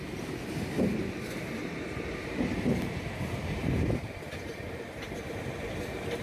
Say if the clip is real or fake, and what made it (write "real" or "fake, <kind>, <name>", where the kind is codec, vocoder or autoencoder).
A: fake, vocoder, BigVGAN v2